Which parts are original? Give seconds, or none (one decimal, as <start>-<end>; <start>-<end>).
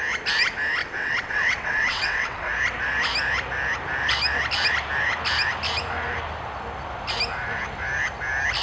0.0-0.8; 2.5-8.6